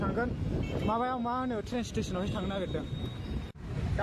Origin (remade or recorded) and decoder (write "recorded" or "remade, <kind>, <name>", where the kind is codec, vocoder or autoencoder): recorded